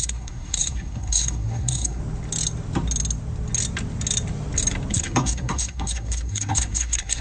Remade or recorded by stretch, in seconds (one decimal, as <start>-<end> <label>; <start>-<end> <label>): 0.0-2.0 remade; 2.0-4.9 recorded; 4.9-7.2 remade